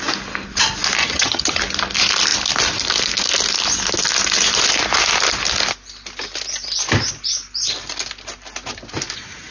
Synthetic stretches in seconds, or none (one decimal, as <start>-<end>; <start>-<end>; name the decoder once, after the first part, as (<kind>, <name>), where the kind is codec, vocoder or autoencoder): 1.0-1.6 (vocoder, HiFi-GAN)